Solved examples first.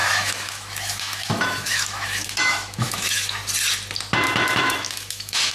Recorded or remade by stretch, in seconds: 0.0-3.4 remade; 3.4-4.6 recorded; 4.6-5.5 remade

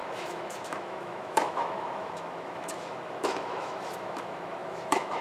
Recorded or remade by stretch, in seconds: 0.0-5.2 remade

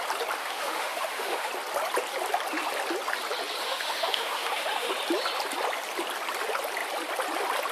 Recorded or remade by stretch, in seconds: 0.0-0.4 recorded; 0.4-1.5 remade; 1.5-3.6 recorded; 3.6-4.9 remade; 4.9-7.7 recorded

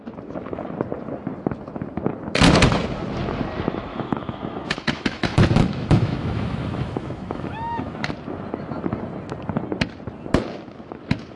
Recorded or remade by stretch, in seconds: 0.0-3.9 recorded; 3.9-8.1 remade; 8.1-11.4 recorded